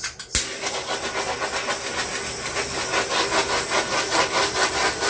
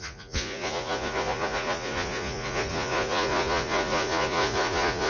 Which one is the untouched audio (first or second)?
first